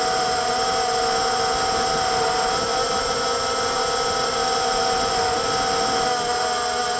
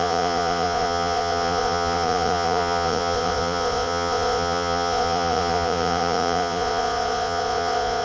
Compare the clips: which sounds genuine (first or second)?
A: first